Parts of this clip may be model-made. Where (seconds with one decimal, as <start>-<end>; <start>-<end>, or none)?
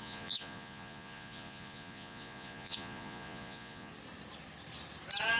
0.0-3.9